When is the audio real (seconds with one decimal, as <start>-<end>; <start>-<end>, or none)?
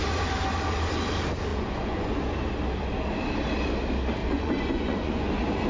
0.0-1.5; 2.2-4.2; 5.3-5.7